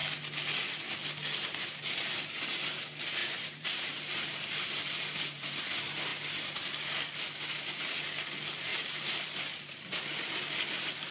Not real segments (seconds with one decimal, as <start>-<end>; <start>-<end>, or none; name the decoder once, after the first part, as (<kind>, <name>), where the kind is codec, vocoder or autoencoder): 3.2-5.6 (vocoder, BigVGAN v2); 8.7-10.0